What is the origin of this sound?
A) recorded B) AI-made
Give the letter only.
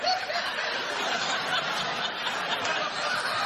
A